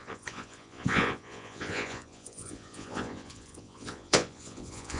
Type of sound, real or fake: fake